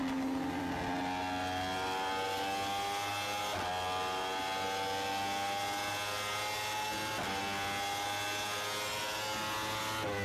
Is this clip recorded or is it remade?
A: recorded